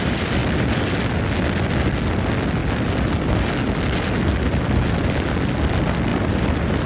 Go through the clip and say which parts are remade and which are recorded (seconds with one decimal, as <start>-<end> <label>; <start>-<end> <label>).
0.0-6.9 recorded